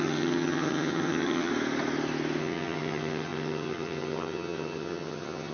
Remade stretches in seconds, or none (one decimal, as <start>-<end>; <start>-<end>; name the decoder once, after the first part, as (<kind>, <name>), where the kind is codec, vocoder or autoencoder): 0.0-1.5 (vocoder, HiFi-GAN); 2.4-5.5